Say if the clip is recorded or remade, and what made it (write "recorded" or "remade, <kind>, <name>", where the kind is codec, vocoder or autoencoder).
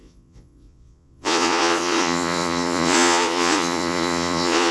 remade, vocoder, Vocos